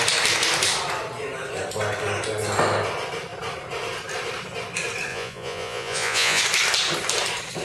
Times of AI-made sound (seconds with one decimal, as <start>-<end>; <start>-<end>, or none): 5.1-6.4